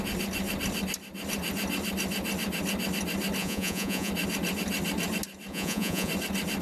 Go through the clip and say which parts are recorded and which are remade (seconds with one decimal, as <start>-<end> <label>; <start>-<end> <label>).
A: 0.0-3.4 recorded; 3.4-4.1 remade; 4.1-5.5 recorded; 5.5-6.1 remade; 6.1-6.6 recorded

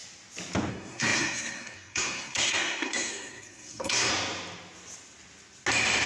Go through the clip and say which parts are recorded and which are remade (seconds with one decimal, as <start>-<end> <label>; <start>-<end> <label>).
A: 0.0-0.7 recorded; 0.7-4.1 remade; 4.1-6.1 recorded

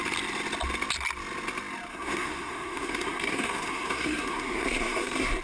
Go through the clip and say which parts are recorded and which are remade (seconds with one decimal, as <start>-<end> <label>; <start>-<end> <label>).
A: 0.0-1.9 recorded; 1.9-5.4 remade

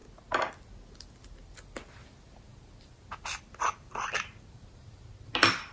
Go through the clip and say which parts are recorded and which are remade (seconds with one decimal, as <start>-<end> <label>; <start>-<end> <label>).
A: 0.0-5.7 recorded